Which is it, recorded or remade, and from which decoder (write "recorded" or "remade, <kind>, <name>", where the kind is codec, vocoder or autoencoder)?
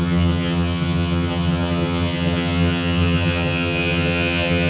remade, vocoder, HiFi-GAN